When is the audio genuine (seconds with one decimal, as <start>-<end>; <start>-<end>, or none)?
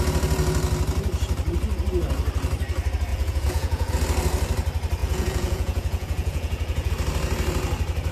0.0-3.1; 3.9-5.0; 6.9-8.1